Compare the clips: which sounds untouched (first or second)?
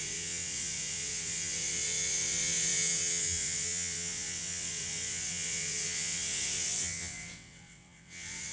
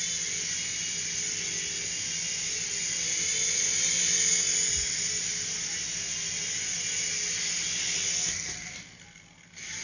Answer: second